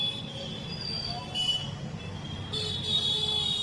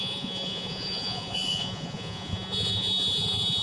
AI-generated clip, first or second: second